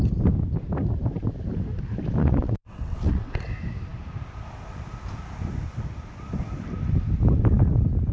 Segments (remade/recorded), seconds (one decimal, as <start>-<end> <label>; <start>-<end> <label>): 0.0-2.2 recorded; 2.2-3.3 remade; 3.3-8.1 recorded